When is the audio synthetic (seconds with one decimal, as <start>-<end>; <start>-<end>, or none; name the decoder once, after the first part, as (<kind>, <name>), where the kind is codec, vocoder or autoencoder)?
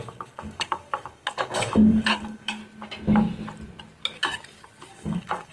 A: 0.0-2.6 (codec, DAC); 4.9-5.5